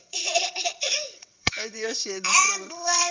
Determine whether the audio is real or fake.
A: fake